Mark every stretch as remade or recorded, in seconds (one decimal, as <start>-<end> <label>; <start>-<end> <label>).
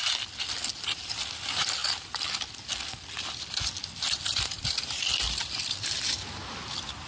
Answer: 0.0-7.1 recorded